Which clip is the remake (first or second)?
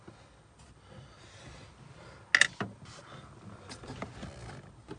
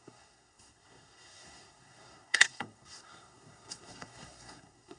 second